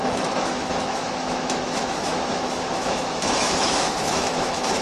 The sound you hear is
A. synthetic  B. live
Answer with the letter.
A